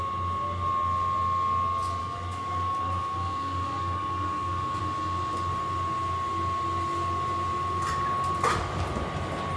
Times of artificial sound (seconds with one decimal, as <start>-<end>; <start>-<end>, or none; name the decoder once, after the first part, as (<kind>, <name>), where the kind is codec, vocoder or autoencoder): 2.0-4.8 (codec, DAC)